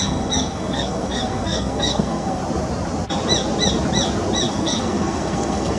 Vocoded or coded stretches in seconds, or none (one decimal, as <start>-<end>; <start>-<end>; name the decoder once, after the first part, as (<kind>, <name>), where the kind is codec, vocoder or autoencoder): 0.0-2.4 (codec, SNAC); 4.5-5.8